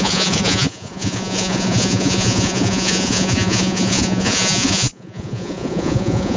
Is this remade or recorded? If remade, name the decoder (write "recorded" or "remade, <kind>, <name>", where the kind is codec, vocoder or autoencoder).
remade, vocoder, Vocos